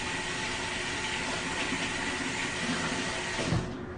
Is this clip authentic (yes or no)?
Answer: yes